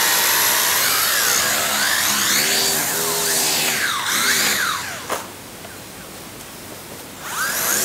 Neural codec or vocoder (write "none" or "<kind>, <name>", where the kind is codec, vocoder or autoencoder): none